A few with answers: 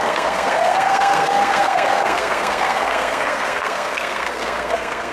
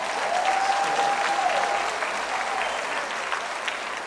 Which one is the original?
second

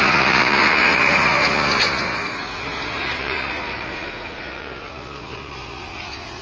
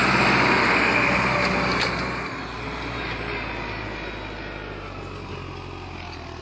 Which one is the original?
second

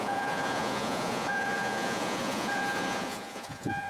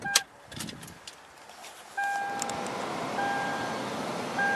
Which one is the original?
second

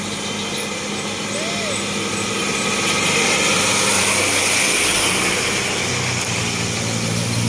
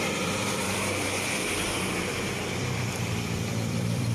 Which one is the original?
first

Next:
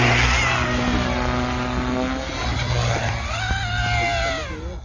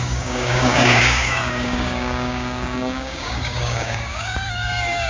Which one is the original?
first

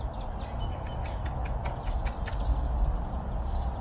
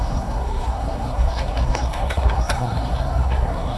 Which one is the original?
first